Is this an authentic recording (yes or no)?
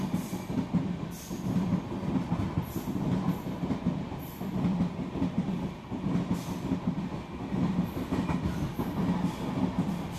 yes